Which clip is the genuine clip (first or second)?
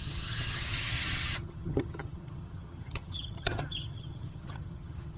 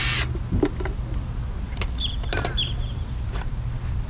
second